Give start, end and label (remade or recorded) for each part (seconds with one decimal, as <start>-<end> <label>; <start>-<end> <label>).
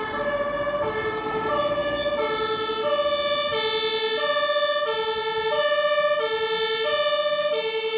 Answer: 0.0-8.0 recorded